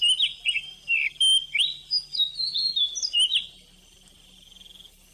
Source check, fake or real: real